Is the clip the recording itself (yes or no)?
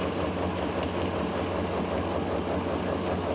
yes